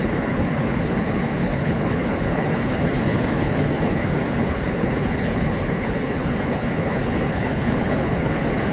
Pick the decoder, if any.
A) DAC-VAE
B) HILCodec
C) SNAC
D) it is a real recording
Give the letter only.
B